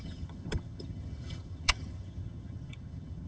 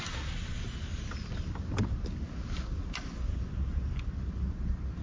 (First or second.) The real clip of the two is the second